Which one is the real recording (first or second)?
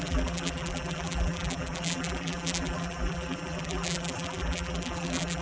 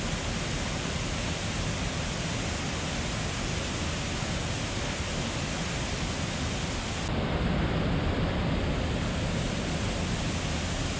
second